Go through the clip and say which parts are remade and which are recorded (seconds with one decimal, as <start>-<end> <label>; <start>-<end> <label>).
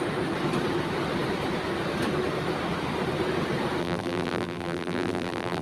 0.0-3.8 recorded; 3.8-5.6 remade